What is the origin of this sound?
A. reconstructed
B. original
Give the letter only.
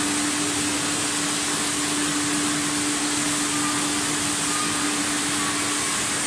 B